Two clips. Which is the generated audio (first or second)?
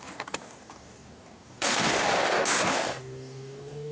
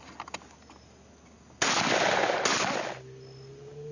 first